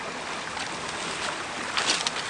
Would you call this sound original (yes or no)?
yes